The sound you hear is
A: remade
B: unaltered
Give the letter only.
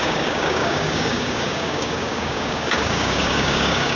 A